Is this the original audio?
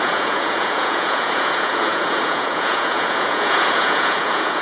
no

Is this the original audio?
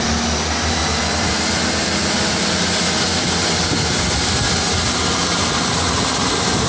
yes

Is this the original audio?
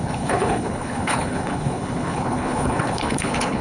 no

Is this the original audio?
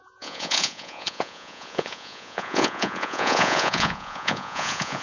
no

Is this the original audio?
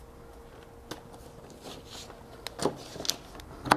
yes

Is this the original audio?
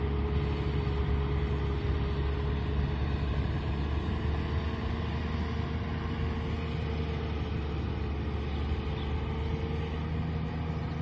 yes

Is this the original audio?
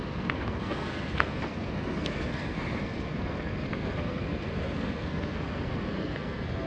no